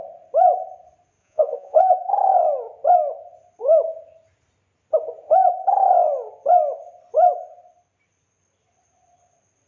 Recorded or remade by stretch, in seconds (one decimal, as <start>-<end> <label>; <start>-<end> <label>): 0.0-1.2 recorded; 1.2-2.1 remade; 2.1-9.7 recorded